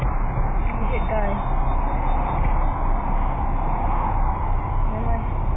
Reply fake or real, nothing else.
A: real